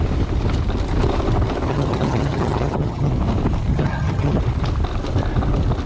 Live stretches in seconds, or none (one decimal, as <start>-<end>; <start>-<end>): 0.0-1.7; 3.1-3.7; 4.4-5.9